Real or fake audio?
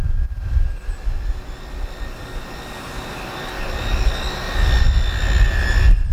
real